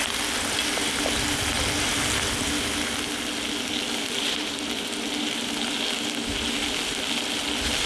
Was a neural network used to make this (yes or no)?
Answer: no